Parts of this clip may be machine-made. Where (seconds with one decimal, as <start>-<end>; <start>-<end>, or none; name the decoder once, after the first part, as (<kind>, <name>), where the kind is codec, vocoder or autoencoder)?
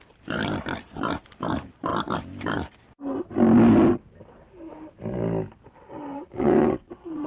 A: 6.1-7.3 (vocoder, WaveNeXt)